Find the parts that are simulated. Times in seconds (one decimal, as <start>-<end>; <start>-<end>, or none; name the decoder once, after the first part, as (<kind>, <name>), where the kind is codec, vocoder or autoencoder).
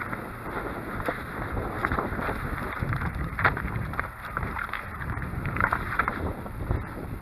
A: 1.8-6.1 (vocoder, BigVGAN v2)